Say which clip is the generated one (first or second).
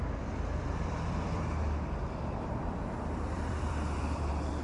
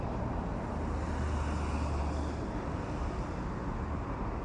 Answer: first